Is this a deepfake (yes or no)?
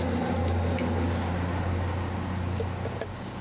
no